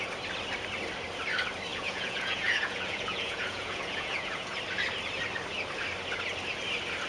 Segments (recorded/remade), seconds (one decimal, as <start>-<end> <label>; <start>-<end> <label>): 0.0-1.7 recorded; 1.7-4.6 remade; 4.6-7.1 recorded